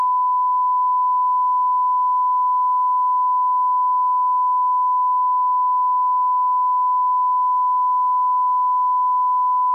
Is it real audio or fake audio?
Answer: real